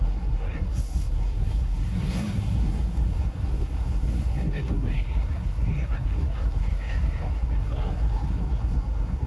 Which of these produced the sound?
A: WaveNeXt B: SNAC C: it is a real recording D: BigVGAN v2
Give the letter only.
B